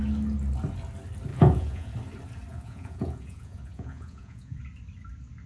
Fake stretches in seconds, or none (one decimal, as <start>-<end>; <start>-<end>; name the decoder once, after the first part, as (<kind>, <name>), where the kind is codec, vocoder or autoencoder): 1.3-1.9 (vocoder, Vocos); 2.5-4.6